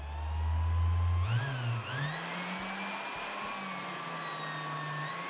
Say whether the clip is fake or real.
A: real